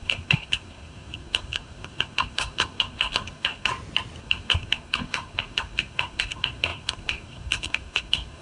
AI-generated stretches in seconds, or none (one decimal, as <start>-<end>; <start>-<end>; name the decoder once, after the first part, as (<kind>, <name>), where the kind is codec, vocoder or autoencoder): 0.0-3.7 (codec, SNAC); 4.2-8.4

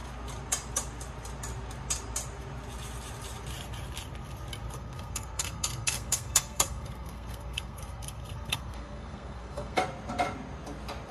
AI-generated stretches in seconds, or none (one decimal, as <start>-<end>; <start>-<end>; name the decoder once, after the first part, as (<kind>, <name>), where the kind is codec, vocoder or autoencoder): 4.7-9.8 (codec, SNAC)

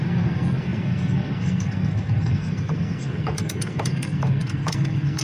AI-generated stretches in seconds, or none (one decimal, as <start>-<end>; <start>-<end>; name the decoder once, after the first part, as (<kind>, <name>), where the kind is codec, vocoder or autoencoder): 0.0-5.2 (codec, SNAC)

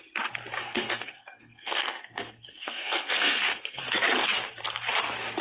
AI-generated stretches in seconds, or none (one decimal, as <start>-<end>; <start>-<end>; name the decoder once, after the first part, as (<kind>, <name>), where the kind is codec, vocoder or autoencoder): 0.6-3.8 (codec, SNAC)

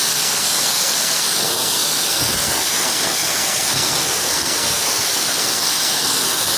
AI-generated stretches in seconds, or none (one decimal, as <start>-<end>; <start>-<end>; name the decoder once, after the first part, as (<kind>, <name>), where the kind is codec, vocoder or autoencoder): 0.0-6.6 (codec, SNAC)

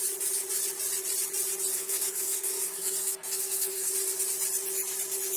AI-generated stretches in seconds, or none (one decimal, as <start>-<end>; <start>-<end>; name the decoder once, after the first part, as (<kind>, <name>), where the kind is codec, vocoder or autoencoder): 1.7-3.9 (codec, SNAC)